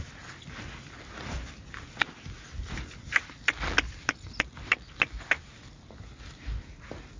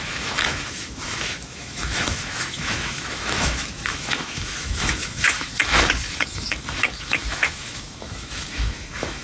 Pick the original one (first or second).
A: first